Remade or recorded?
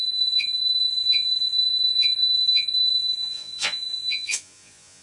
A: remade